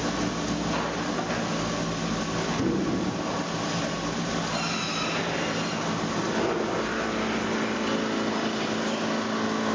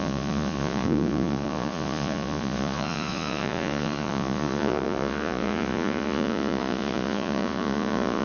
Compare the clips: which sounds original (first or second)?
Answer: first